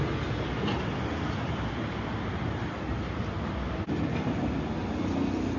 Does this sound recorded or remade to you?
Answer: recorded